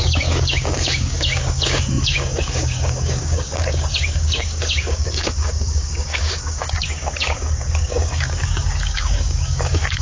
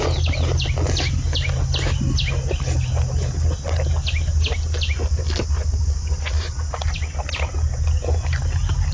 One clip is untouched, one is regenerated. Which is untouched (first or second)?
second